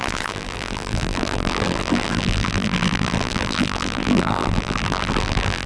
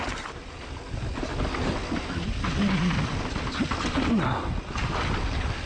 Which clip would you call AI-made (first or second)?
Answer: first